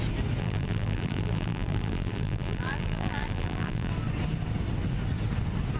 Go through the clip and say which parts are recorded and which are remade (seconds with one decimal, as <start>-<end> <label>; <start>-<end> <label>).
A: 0.0-0.4 recorded; 0.4-3.9 remade; 3.9-5.8 recorded